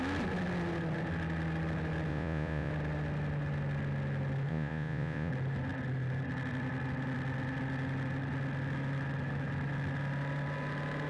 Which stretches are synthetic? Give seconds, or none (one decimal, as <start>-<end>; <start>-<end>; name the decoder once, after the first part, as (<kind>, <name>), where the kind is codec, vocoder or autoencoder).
2.1-2.7 (vocoder, Vocos); 4.5-5.3